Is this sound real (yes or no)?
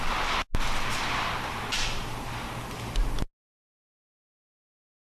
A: yes